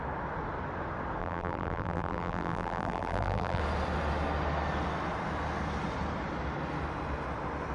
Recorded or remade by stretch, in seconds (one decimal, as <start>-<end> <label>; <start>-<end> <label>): 0.0-1.2 recorded; 1.2-3.6 remade; 3.6-7.7 recorded